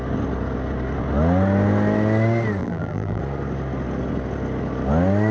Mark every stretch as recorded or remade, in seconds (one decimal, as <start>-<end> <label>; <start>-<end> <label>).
0.0-2.6 recorded; 2.6-3.2 remade; 3.2-5.3 recorded